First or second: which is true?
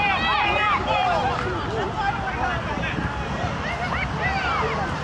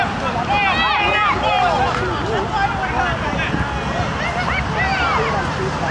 second